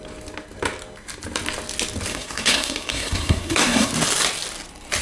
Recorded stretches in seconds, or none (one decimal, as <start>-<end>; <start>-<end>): 0.0-2.1; 3.9-5.0